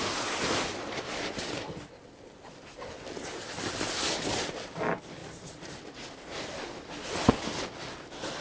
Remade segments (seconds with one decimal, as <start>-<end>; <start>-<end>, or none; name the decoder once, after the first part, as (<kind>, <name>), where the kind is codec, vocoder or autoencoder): none